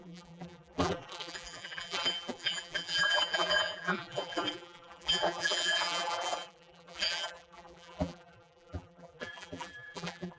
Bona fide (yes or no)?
no